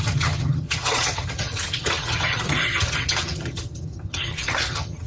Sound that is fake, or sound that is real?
fake